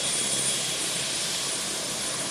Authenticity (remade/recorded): remade